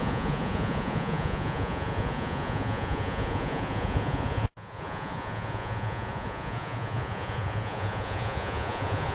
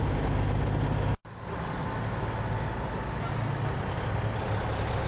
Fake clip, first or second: first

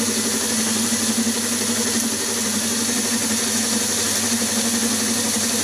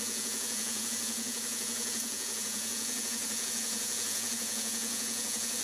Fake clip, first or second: second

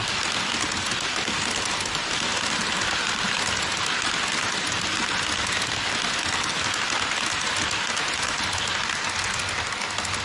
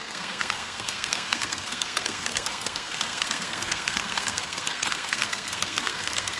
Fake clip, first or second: second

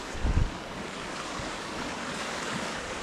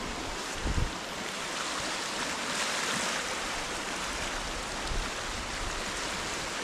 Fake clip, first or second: first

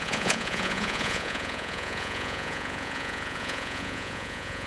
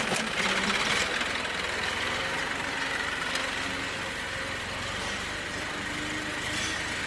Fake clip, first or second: first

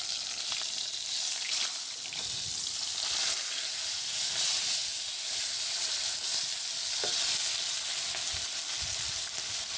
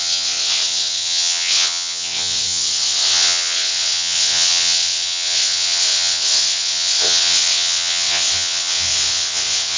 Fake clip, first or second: second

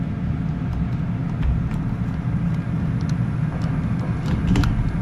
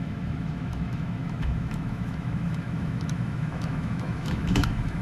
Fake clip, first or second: second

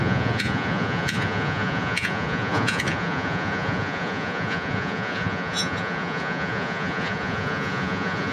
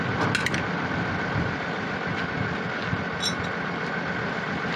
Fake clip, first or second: first